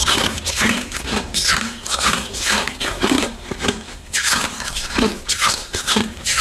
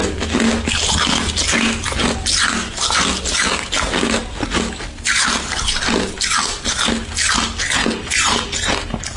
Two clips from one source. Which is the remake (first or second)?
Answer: first